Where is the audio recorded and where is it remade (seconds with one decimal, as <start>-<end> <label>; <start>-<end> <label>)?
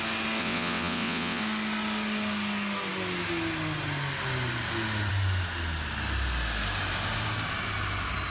0.0-0.4 recorded; 0.4-1.4 remade; 1.4-8.3 recorded